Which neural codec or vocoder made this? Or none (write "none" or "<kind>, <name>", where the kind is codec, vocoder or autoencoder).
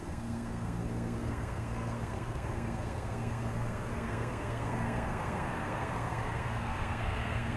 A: codec, SNAC